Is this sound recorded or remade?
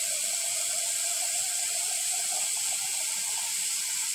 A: recorded